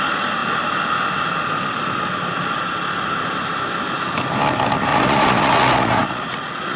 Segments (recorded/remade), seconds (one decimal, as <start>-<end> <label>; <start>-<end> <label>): 0.0-4.9 recorded; 4.9-6.8 remade